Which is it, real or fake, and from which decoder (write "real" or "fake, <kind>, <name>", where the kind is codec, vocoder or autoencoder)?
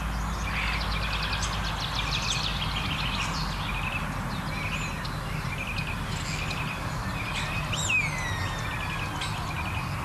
real